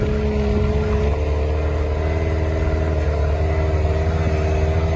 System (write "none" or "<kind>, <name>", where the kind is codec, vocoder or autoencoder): none